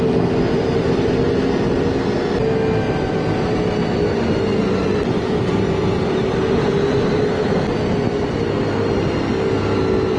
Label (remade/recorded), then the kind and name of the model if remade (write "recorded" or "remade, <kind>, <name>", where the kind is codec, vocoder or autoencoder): recorded